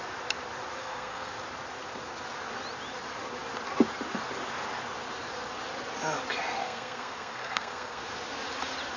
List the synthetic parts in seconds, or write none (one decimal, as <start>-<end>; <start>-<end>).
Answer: 0.8-1.3; 6.6-8.0